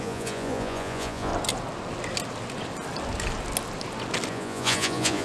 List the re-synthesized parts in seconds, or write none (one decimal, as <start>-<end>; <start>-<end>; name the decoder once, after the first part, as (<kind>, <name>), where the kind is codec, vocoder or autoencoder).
0.0-1.3 (vocoder, Vocos); 4.3-5.2